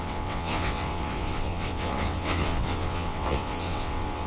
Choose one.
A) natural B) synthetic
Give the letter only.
B